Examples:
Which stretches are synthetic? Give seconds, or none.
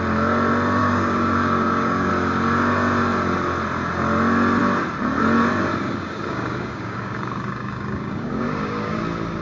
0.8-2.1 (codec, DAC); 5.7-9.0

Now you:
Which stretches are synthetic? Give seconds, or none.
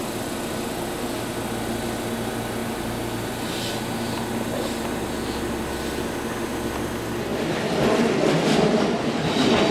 none